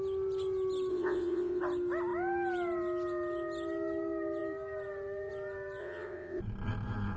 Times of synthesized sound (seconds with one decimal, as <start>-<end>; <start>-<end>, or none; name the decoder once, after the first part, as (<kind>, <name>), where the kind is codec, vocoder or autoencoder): 0.9-1.6 (vocoder, WaveNeXt); 5.8-6.4